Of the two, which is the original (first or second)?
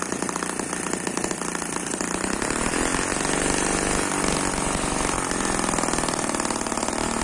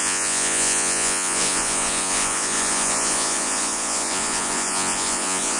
first